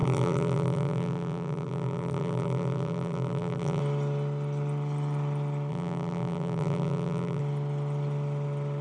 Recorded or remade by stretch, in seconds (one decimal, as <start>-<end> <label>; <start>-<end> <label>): 0.0-3.8 remade; 3.8-5.7 recorded; 5.7-7.4 remade; 7.4-8.8 recorded